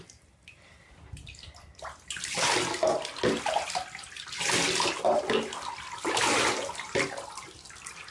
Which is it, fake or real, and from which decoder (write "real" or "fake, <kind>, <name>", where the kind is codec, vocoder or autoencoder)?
real